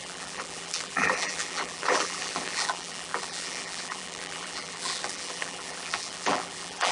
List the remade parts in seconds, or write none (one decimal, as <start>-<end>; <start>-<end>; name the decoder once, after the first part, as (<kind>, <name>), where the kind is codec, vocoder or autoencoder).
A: 0.0-6.9 (vocoder, BigVGAN v2)